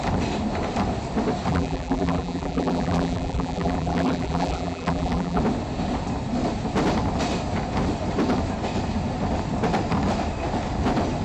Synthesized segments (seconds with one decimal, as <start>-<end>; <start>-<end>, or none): 1.5-5.4